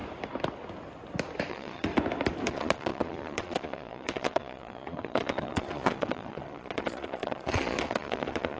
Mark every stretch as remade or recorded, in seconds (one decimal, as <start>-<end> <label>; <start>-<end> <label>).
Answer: 0.0-1.5 recorded; 1.5-1.9 remade; 1.9-2.5 recorded; 2.5-8.6 remade